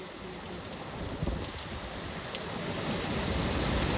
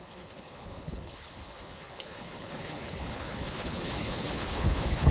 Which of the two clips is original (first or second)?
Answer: first